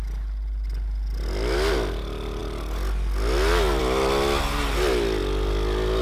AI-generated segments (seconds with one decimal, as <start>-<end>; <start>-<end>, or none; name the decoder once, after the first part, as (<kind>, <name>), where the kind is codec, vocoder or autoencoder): none